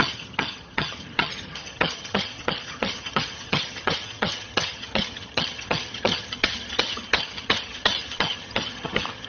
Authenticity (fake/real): fake